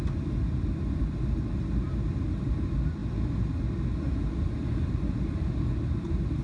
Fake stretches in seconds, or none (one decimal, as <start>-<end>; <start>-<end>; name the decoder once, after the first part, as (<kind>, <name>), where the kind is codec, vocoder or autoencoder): none